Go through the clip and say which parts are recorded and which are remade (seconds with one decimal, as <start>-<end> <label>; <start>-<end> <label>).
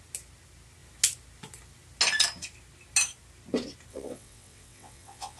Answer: 0.0-3.9 recorded; 3.9-5.4 remade